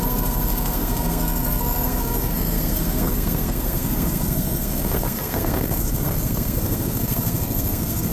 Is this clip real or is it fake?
fake